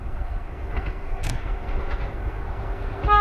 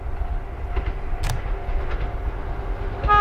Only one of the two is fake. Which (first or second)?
first